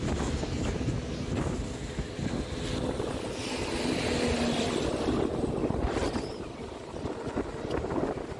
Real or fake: real